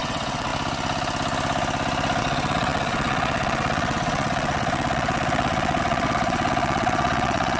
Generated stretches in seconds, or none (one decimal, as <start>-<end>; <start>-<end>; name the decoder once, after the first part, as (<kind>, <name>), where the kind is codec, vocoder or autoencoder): 0.0-0.5 (vocoder, WaveNeXt); 2.2-7.6